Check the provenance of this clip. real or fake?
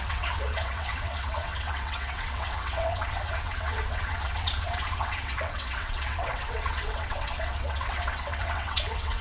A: fake